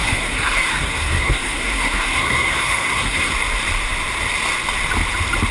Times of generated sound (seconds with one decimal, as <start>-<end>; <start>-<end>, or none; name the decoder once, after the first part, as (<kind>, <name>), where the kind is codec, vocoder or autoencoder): 0.0-3.3 (codec, SNAC)